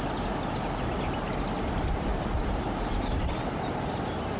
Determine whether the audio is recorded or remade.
recorded